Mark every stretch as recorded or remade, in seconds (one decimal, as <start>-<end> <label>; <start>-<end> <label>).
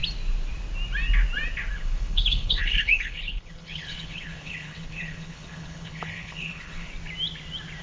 0.0-1.7 recorded; 1.7-6.9 remade; 6.9-7.8 recorded